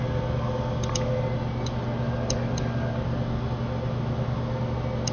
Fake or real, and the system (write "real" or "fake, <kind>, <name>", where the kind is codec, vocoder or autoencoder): real